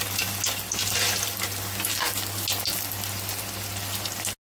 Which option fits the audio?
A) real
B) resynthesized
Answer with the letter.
A